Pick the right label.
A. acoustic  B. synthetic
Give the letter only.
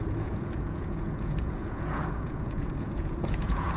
B